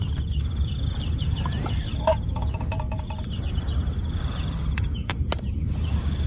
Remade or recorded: remade